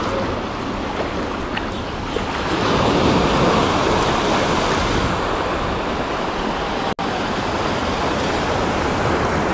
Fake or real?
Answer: real